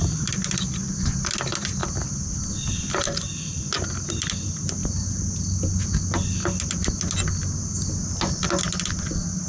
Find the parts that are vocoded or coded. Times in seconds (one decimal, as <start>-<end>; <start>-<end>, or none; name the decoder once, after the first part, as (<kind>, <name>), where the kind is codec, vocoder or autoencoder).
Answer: none